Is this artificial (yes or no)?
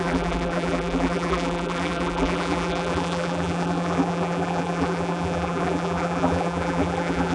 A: yes